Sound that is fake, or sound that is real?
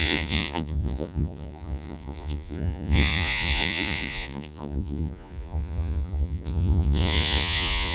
fake